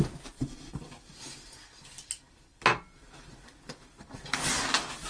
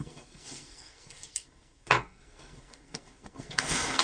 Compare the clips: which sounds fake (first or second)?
second